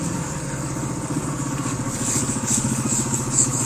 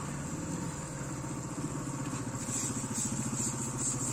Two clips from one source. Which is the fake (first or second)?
first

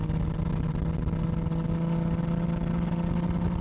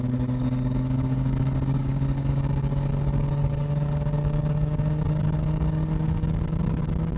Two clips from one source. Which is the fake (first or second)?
second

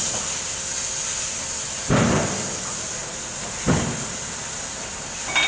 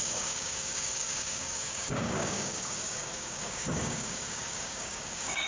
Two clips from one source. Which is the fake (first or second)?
second